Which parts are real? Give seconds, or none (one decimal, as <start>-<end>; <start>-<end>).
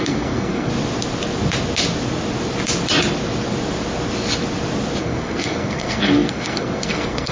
0.7-5.0